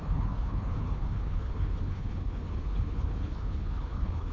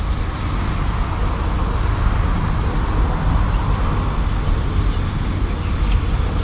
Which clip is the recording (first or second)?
second